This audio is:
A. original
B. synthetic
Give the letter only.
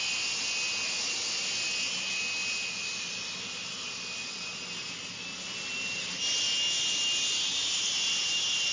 A